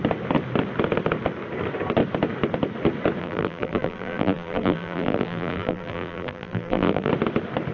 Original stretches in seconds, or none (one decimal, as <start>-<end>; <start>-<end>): 0.0-3.2; 7.1-7.7